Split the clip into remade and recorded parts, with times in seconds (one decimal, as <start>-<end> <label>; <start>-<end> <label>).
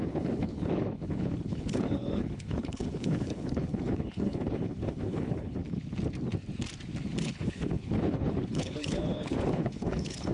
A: 0.0-5.6 remade; 5.6-7.2 recorded; 7.2-10.3 remade